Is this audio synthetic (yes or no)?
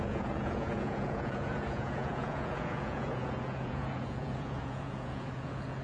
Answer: yes